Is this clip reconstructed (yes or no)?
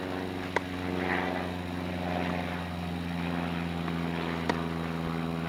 no